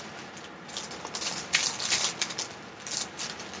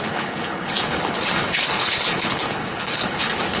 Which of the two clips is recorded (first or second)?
first